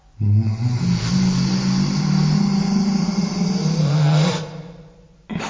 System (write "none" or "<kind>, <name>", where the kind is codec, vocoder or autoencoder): none